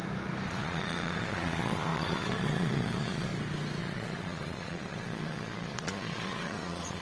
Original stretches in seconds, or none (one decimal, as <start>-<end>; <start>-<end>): 0.0-0.5; 3.3-3.8